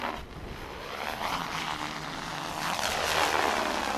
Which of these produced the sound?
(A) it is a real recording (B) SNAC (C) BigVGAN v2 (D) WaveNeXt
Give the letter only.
A